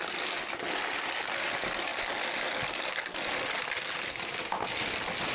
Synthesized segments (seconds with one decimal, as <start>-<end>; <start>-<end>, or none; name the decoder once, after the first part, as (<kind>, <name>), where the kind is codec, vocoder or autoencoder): none